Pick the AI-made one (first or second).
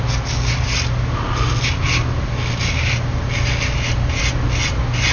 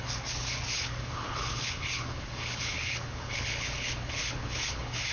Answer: second